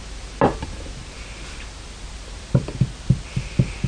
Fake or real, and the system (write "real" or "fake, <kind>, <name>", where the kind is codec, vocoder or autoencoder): real